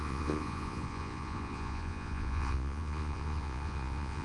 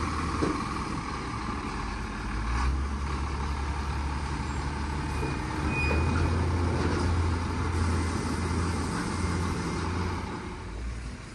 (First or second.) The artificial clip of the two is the first